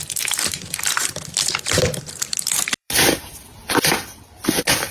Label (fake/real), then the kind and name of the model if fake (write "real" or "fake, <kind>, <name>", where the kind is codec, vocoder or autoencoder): fake, vocoder, BigVGAN v2